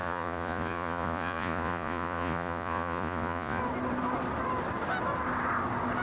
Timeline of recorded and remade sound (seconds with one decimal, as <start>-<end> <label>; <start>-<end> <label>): 0.0-3.6 remade; 3.6-6.0 recorded